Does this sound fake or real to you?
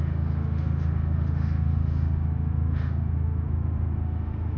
fake